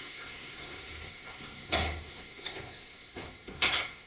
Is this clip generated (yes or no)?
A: yes